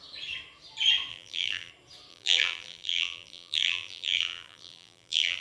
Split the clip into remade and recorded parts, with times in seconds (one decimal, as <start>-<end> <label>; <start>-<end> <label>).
0.0-1.1 recorded; 1.1-1.7 remade; 1.7-2.1 recorded; 2.1-5.4 remade